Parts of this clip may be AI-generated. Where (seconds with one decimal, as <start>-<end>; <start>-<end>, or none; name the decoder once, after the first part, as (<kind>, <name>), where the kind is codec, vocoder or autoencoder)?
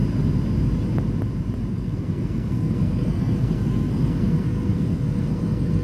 1.7-5.8 (codec, SNAC)